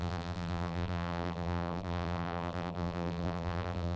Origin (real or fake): fake